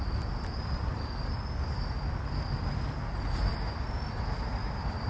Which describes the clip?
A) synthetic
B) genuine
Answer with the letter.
B